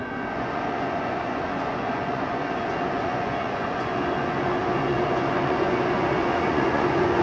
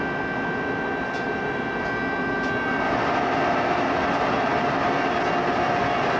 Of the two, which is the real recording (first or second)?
second